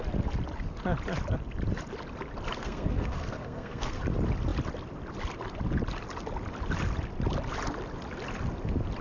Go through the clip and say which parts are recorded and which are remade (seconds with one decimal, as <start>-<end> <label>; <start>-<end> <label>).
0.0-2.6 recorded; 2.6-4.0 remade; 4.0-9.0 recorded